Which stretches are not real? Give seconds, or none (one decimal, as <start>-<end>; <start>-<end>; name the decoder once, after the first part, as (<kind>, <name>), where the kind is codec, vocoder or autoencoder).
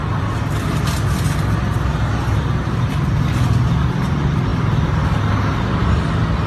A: 4.5-5.2 (vocoder, BigVGAN v2)